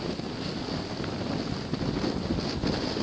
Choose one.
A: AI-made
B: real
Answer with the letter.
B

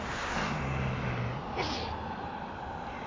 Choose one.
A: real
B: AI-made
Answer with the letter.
A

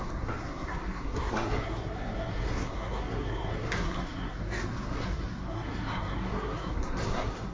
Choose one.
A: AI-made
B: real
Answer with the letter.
A